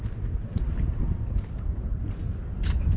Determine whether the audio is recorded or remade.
remade